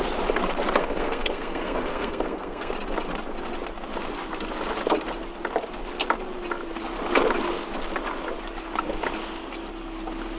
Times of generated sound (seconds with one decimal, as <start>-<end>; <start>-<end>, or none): 0.8-2.7